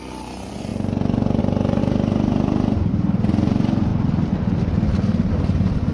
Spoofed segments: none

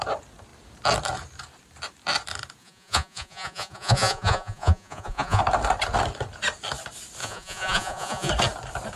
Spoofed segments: 2.6-5.4 (vocoder, Vocos); 7.2-8.3

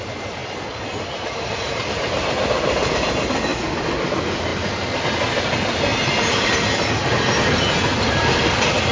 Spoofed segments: none

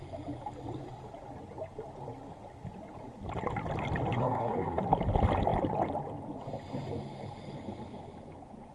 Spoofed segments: 4.2-4.8 (codec, SNAC)

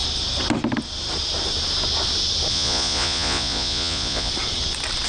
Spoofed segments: 2.5-4.3 (vocoder, Vocos)